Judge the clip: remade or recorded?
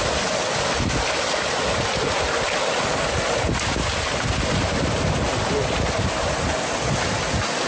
recorded